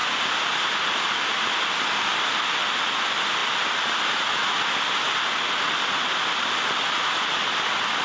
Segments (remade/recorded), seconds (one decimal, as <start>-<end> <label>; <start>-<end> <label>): 0.0-0.5 recorded; 0.5-3.4 remade; 3.4-6.3 recorded; 6.3-8.0 remade